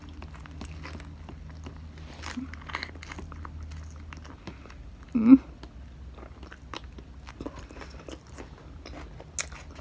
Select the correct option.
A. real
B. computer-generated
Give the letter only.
A